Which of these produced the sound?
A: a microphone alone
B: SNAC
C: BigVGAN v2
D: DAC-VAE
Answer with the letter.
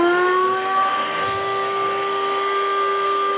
B